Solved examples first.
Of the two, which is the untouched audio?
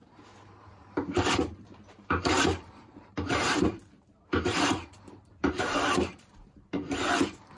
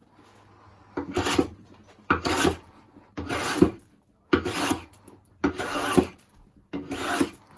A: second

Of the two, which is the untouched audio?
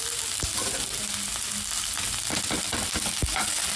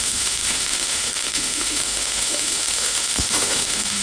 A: first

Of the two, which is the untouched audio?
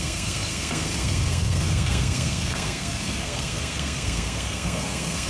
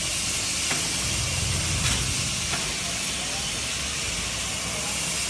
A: second